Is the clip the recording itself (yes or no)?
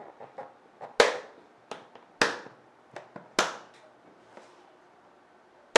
yes